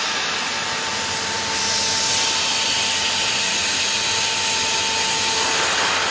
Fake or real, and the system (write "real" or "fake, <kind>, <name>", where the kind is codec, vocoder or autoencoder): real